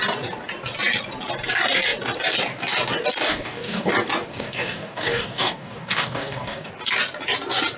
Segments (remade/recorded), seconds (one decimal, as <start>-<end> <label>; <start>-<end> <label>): 0.0-3.3 recorded; 3.3-3.9 remade; 3.9-4.3 recorded; 4.3-6.7 remade; 6.7-7.8 recorded